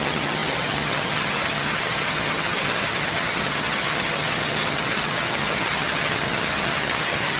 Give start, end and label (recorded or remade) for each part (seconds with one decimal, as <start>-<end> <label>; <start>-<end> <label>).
0.0-7.4 remade